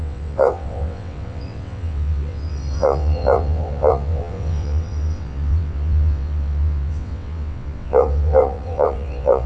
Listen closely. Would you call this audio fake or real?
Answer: fake